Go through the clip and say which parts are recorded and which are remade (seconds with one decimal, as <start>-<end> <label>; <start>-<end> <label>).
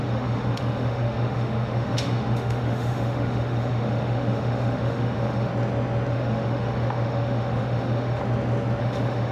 0.0-5.5 remade; 5.5-6.1 recorded; 6.1-8.2 remade; 8.2-8.8 recorded; 8.8-9.3 remade